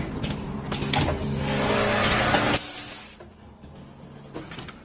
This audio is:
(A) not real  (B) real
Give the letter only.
B